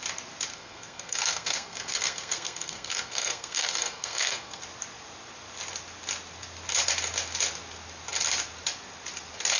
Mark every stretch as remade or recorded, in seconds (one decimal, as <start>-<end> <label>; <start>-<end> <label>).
0.0-0.5 recorded; 0.5-4.6 remade; 4.6-9.6 recorded